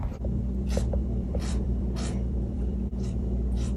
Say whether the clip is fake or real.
fake